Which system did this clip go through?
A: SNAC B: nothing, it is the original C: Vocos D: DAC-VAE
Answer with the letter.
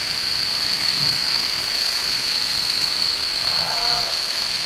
A